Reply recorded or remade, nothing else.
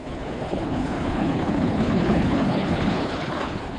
remade